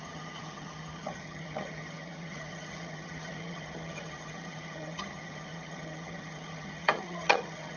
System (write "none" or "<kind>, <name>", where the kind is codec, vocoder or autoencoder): vocoder, HiFi-GAN